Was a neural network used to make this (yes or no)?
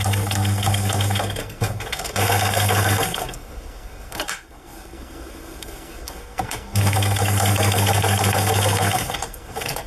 yes